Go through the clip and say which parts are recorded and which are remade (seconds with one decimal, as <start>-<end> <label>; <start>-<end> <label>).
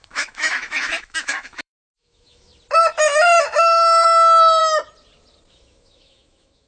0.0-2.5 remade; 2.5-3.4 recorded; 3.4-4.6 remade; 4.6-5.5 recorded; 5.5-6.7 remade